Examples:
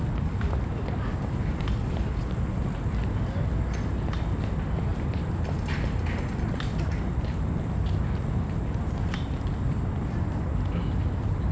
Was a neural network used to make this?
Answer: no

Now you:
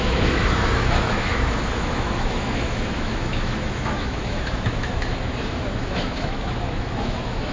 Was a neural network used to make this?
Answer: yes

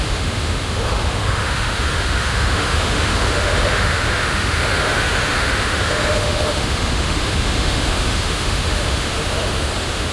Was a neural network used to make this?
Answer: yes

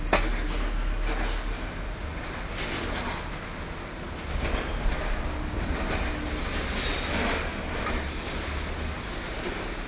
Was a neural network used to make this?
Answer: no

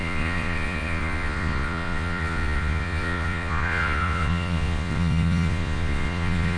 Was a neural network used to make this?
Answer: yes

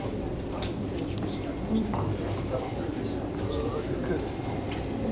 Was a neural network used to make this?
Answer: yes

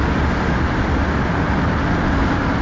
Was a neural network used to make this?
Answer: no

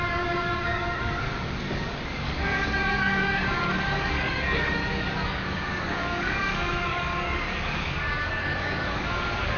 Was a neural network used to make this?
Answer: yes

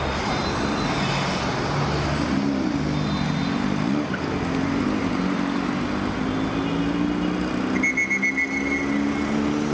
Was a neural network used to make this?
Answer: no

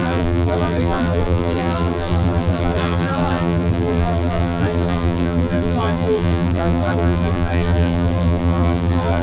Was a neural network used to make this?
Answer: yes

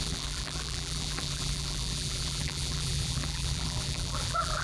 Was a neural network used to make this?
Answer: yes